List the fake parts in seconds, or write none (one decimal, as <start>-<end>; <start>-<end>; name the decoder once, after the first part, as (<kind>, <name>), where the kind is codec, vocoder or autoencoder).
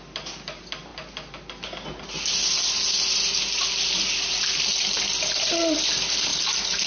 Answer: 0.0-0.9 (vocoder, BigVGAN v2); 5.0-6.3